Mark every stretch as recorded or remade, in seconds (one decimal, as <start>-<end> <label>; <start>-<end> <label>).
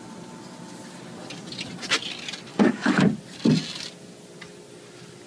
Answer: 0.0-2.5 recorded; 2.5-3.0 remade; 3.0-5.3 recorded